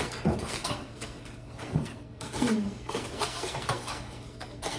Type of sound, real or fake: fake